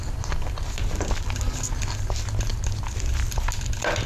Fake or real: real